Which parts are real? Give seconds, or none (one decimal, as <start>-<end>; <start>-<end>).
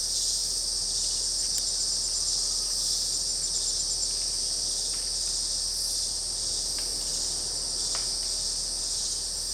0.0-9.5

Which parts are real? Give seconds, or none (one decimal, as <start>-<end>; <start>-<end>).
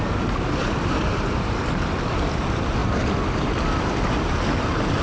0.0-0.6; 1.6-5.0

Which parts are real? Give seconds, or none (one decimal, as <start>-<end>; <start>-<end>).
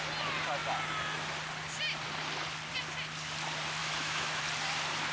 0.0-3.8; 4.4-5.1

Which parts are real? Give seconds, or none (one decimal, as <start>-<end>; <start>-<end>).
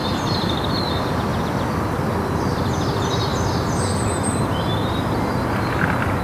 0.7-6.2